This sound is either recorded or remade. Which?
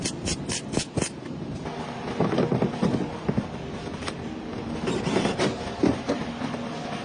recorded